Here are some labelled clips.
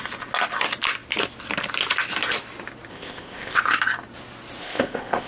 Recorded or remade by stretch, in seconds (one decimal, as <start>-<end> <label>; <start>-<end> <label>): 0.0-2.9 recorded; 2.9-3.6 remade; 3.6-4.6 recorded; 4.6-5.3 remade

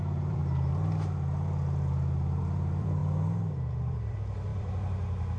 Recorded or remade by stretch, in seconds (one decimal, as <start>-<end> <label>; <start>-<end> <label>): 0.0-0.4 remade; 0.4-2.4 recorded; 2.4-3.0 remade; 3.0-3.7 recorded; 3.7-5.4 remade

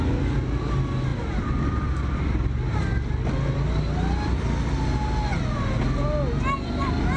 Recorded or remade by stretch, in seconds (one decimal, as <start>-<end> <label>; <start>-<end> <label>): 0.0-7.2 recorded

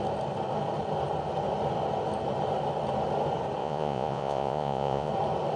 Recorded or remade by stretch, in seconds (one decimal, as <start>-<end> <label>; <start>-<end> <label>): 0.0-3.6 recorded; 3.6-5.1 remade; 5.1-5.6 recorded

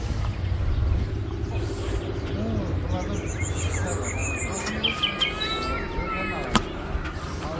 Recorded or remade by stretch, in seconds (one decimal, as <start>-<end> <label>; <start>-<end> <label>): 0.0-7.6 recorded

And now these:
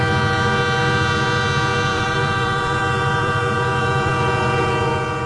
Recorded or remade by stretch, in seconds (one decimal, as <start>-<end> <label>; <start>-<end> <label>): 0.0-1.9 recorded; 1.9-4.7 remade; 4.7-5.3 recorded

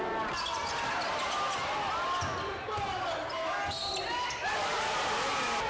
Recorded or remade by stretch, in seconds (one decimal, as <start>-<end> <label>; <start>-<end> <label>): 0.0-5.7 recorded

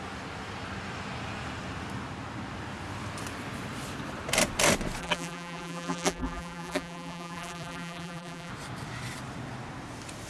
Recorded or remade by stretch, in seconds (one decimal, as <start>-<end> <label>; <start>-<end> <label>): 0.0-5.0 recorded; 5.0-8.5 remade; 8.5-10.3 recorded